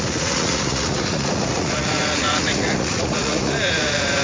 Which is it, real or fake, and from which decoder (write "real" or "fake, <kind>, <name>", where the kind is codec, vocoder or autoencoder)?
fake, vocoder, Vocos